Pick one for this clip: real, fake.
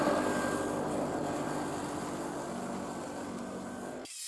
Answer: real